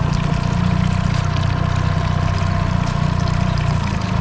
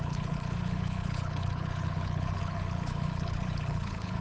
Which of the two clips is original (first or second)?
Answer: first